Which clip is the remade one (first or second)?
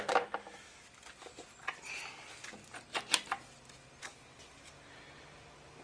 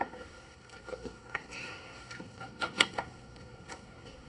second